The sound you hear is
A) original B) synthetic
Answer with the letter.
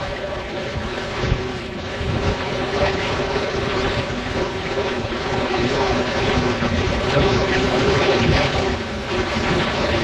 B